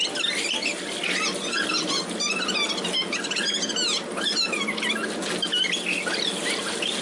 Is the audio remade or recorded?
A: recorded